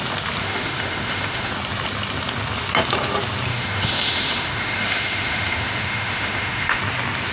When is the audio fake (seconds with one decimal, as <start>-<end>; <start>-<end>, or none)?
0.4-1.5; 3.5-6.8